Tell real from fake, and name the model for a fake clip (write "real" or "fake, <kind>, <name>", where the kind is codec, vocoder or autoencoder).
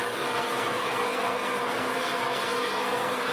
fake, codec, SNAC